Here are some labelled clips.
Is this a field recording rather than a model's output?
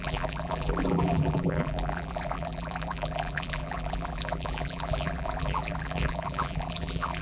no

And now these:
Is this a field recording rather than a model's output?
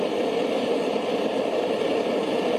no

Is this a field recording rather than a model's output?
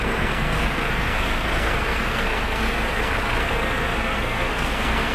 no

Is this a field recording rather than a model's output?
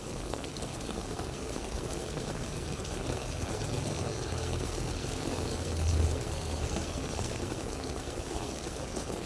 no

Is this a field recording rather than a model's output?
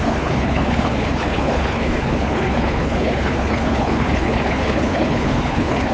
no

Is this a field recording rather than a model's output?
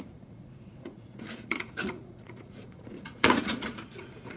no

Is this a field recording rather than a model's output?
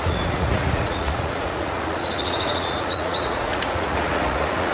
no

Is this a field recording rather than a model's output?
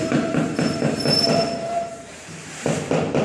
no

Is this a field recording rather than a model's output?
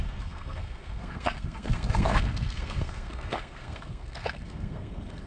no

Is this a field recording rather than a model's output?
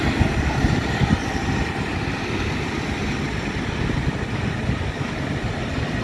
yes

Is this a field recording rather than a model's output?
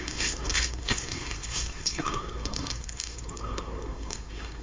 no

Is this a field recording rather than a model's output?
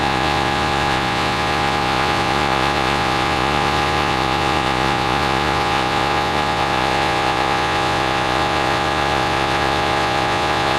no